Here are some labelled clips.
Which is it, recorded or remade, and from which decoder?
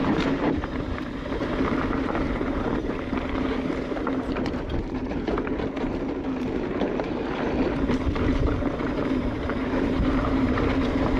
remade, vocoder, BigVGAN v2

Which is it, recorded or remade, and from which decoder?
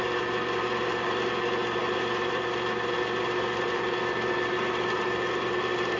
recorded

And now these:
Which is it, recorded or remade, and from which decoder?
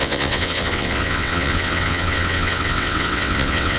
remade, vocoder, WaveNeXt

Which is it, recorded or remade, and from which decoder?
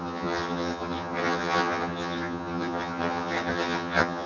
remade, vocoder, HiFi-GAN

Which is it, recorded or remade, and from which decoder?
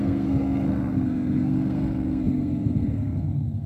remade, codec, SNAC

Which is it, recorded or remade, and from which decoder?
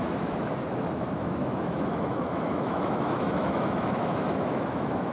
remade, autoencoder, DAC-VAE